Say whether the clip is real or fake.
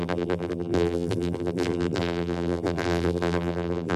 fake